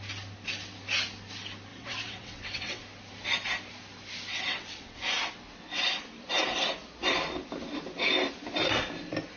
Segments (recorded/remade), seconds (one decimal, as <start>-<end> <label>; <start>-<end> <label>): 0.0-1.7 recorded; 1.7-2.8 remade; 2.8-4.3 recorded; 4.3-5.0 remade; 5.0-9.4 recorded

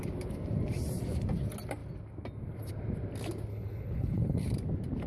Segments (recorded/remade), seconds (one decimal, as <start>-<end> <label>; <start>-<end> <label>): 0.0-3.5 recorded; 3.5-4.5 remade; 4.5-5.1 recorded

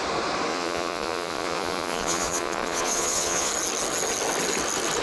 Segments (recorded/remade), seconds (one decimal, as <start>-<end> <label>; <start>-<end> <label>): 0.0-0.5 recorded; 0.5-3.5 remade; 3.5-5.0 recorded

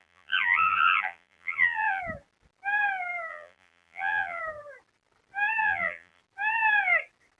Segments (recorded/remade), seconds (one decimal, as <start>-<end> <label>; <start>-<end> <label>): 0.0-2.0 remade; 2.0-3.3 recorded; 3.3-4.4 remade; 4.4-5.6 recorded; 5.6-6.2 remade; 6.2-7.4 recorded